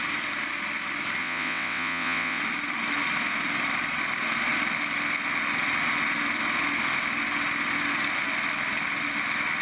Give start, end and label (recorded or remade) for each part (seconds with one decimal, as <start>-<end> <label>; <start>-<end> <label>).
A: 0.0-1.2 recorded; 1.2-2.4 remade; 2.4-9.6 recorded